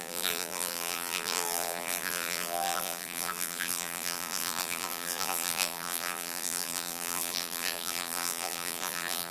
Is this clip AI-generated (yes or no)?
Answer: yes